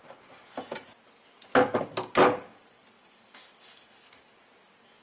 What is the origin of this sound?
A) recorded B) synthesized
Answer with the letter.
A